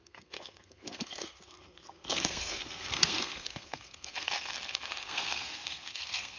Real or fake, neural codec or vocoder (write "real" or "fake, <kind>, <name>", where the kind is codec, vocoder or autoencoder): fake, codec, SNAC